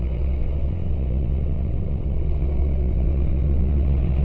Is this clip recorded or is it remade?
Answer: remade